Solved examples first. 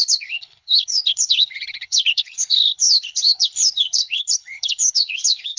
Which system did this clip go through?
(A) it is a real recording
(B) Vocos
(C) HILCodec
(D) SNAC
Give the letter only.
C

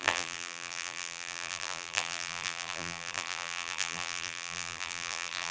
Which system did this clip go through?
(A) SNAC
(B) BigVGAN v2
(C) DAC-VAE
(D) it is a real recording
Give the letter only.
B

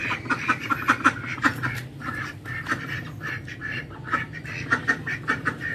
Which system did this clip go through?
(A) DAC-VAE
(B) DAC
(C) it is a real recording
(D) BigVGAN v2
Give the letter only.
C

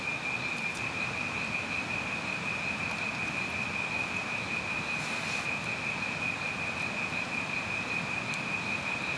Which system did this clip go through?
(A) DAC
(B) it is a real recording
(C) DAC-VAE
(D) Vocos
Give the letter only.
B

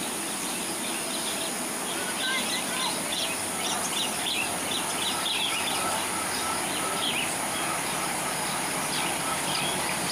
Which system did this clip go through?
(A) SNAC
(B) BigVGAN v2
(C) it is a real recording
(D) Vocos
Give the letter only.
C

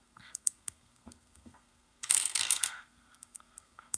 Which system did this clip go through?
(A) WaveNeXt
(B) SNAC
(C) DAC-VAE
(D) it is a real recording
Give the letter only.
B